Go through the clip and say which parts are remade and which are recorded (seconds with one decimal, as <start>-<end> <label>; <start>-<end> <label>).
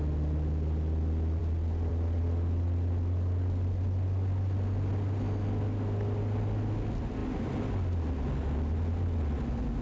0.0-9.8 recorded